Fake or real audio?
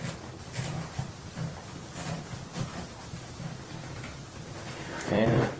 fake